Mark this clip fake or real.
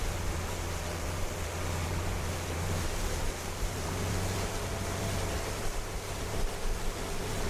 fake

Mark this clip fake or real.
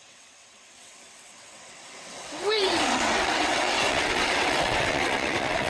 fake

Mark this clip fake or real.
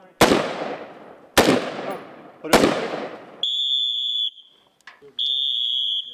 real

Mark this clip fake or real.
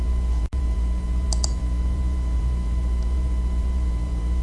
fake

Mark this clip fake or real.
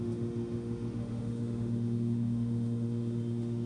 fake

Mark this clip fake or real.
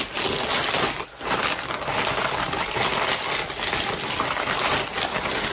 real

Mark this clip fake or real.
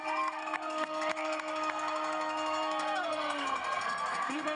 fake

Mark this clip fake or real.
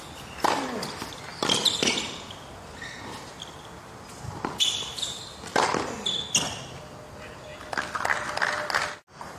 real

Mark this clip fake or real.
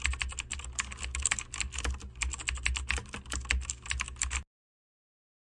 real